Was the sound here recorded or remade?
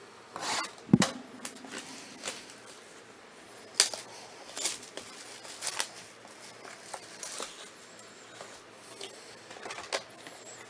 recorded